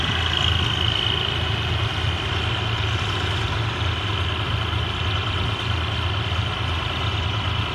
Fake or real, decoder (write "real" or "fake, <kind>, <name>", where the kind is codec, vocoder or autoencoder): real